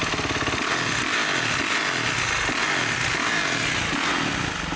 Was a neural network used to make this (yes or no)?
no